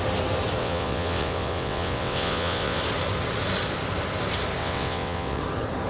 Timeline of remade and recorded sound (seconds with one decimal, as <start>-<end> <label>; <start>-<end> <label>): 0.0-0.6 recorded; 0.6-2.8 remade; 2.8-4.6 recorded; 4.6-5.4 remade; 5.4-5.9 recorded